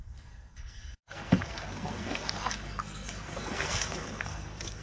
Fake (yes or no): yes